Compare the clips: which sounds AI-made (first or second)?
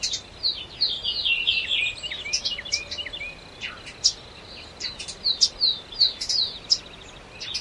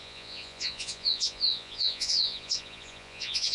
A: second